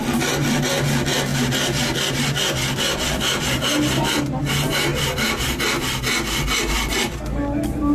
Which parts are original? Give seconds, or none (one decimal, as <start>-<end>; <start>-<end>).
0.0-7.9